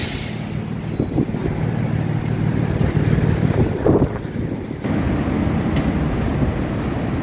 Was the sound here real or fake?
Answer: real